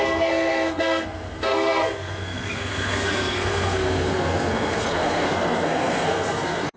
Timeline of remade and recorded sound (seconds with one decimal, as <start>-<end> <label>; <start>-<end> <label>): 0.0-6.8 remade